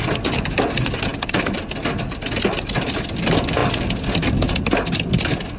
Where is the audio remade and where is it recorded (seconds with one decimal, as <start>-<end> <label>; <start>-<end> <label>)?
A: 0.0-5.6 recorded